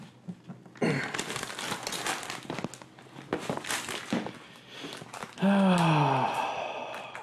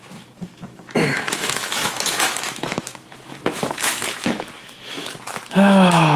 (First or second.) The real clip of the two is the first